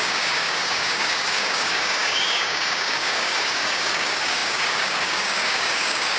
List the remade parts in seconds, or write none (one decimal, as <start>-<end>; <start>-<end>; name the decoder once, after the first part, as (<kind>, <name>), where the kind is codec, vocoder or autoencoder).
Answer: 0.0-6.2 (codec, DAC)